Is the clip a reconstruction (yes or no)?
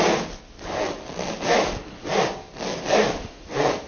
no